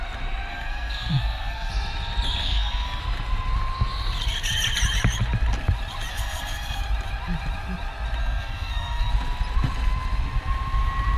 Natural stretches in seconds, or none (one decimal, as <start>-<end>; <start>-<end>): 0.0-0.5; 1.7-2.4; 3.0-6.1; 6.8-8.2; 9.1-11.2